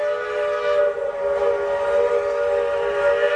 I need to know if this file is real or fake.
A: real